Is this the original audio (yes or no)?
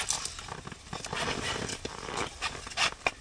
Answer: yes